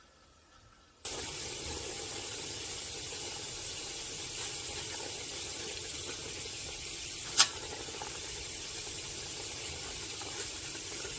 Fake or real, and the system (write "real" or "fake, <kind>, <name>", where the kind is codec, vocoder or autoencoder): real